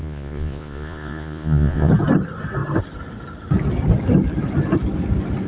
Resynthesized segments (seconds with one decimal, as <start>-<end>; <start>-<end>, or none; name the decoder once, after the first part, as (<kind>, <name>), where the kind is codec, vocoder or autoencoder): 0.0-1.9 (vocoder, Vocos)